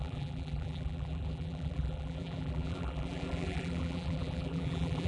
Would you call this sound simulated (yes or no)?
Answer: yes